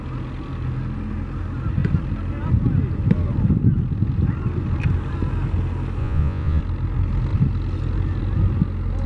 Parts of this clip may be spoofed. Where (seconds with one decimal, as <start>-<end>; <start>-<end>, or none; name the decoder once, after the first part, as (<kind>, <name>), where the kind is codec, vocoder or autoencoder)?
6.0-6.6 (vocoder, Vocos)